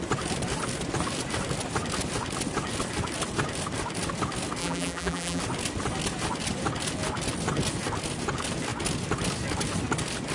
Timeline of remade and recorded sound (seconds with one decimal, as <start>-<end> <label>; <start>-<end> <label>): 0.0-4.6 recorded; 4.6-5.4 remade; 5.4-10.3 recorded